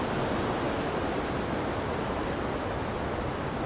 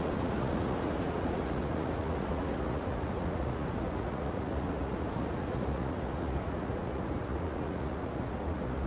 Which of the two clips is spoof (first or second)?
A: second